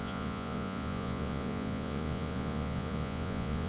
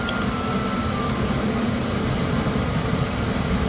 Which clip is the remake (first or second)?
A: first